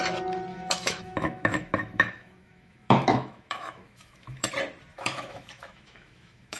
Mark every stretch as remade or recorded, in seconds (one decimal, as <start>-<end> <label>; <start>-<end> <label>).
0.0-0.5 recorded; 0.5-4.5 remade; 4.5-4.9 recorded; 4.9-6.6 remade